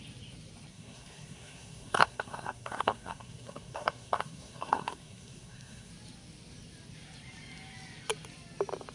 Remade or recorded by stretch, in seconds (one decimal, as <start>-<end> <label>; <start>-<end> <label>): 0.0-0.7 recorded; 0.7-5.9 remade; 5.9-8.9 recorded